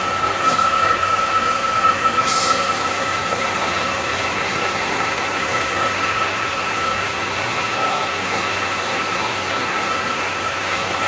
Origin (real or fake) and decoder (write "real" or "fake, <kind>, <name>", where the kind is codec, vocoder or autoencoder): fake, codec, SNAC